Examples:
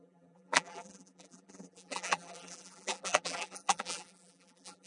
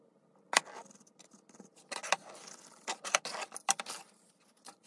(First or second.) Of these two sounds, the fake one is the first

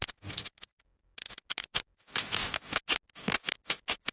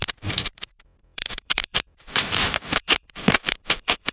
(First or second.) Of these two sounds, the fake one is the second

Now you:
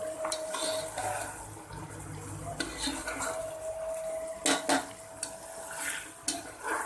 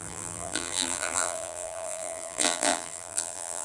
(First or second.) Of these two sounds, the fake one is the second